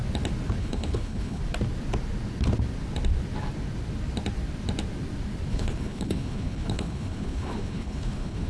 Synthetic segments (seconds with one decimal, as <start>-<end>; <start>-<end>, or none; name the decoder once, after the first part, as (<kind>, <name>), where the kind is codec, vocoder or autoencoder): 0.6-1.4 (codec, HILCodec); 5.5-8.5